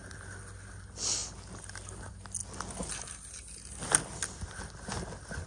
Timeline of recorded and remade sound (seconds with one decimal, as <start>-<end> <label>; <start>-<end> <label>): 0.0-5.5 recorded

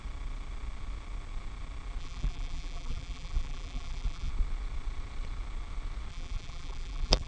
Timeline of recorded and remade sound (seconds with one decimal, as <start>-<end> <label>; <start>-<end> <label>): 0.0-2.0 recorded; 2.0-4.3 remade; 4.3-6.1 recorded; 6.1-7.3 remade

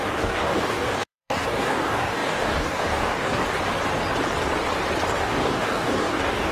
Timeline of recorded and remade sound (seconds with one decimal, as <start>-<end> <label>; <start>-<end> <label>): 0.0-3.4 remade; 3.4-5.2 recorded; 5.2-6.5 remade

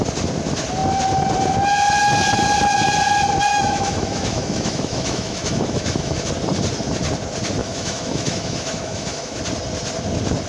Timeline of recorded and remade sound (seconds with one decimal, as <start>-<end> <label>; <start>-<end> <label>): 0.0-3.5 recorded; 3.5-6.3 remade; 6.3-7.6 recorded; 7.6-9.4 remade; 9.4-10.5 recorded

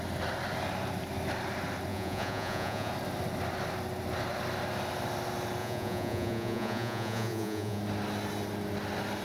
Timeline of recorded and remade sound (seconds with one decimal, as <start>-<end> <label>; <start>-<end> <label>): 0.0-1.9 recorded; 1.9-2.9 remade; 2.9-5.6 recorded; 5.6-7.8 remade; 7.8-9.2 recorded